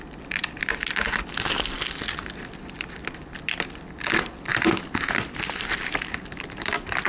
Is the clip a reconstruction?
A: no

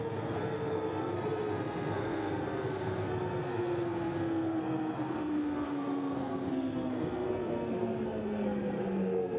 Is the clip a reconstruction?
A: yes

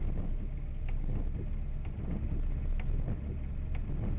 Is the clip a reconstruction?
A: no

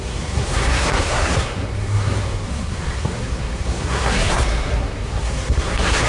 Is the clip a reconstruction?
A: yes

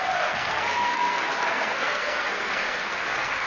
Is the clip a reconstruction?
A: yes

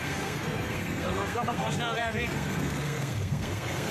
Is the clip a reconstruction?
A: yes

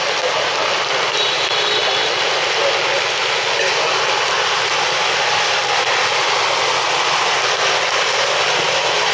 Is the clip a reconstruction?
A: no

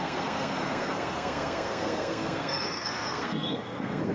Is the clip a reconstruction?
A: yes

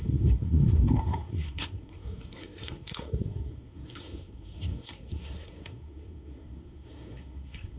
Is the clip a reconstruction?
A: yes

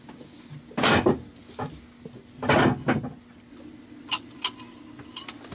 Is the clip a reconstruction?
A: no